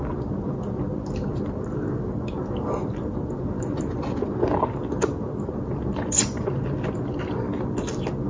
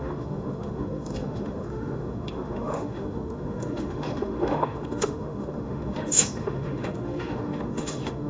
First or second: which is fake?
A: second